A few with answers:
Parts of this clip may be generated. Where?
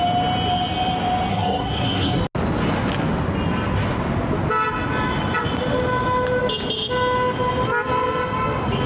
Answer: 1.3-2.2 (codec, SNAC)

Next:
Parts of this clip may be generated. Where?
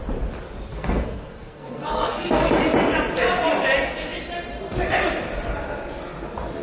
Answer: 0.7-2.5 (codec, SNAC)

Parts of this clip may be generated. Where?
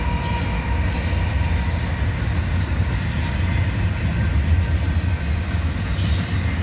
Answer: none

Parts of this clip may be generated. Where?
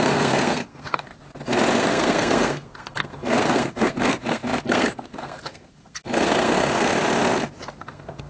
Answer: 0.0-1.1 (codec, SNAC); 1.8-6.9; 7.8-8.3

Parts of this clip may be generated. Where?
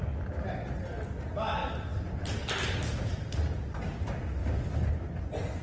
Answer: none